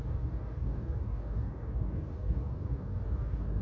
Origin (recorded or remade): remade